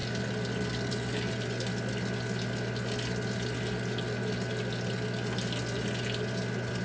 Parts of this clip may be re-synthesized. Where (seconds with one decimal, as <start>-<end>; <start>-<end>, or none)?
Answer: none